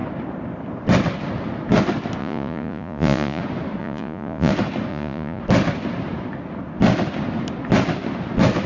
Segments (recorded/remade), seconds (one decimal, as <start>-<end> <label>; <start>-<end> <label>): 0.0-2.2 recorded; 2.2-3.4 remade; 3.4-3.8 recorded; 3.8-4.5 remade; 4.5-4.9 recorded; 4.9-5.4 remade; 5.4-8.7 recorded